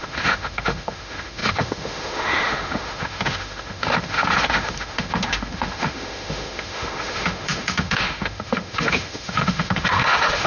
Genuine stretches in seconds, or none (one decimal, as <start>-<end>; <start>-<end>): none